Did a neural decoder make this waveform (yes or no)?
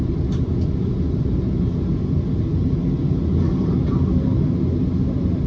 no